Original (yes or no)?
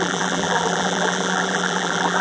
no